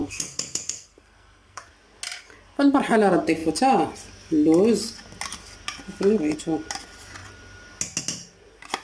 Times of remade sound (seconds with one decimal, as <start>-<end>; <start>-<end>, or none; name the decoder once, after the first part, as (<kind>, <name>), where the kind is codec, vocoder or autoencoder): 0.0-1.6 (codec, SNAC)